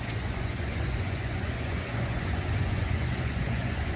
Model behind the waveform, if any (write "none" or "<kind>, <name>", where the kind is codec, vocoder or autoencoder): vocoder, Vocos